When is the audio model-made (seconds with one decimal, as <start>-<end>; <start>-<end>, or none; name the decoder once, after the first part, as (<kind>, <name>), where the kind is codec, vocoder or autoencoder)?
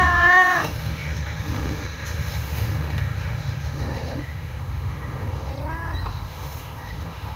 0.0-5.5 (autoencoder, DAC-VAE); 6.1-7.4